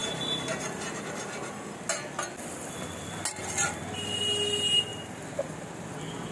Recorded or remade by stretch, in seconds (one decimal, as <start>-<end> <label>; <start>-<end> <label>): 0.0-6.3 recorded